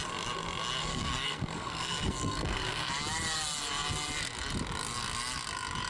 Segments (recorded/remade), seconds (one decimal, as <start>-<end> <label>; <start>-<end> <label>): 0.0-0.9 recorded; 0.9-2.9 remade; 2.9-5.9 recorded

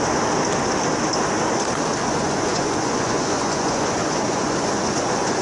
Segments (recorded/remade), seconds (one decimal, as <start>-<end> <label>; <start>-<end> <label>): 0.0-2.0 recorded; 2.0-5.4 remade

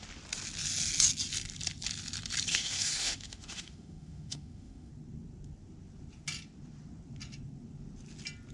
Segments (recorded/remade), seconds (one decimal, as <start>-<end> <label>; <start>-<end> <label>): 0.0-2.5 recorded; 2.5-4.9 remade; 4.9-8.5 recorded

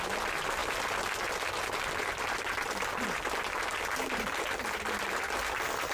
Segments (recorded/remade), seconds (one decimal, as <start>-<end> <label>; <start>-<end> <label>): 0.0-5.9 recorded